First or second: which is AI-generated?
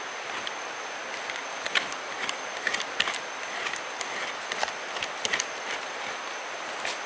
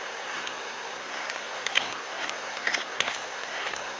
second